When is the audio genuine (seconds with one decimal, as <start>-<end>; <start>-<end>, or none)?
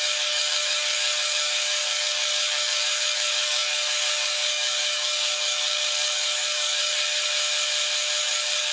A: 7.3-8.2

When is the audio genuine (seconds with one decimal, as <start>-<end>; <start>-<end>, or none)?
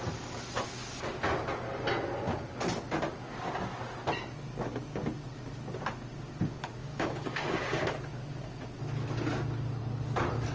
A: 0.0-6.8; 7.8-10.5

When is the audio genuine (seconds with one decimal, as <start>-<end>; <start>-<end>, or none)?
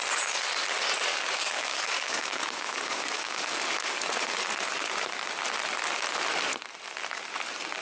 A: 0.0-1.1; 3.6-7.8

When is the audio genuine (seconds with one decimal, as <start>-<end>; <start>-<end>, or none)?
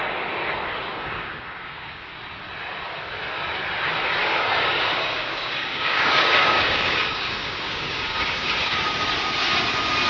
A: 0.0-0.9; 2.1-4.2; 8.7-10.1